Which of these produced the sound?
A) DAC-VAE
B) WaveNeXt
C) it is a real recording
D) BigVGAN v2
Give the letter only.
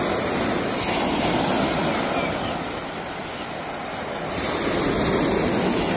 C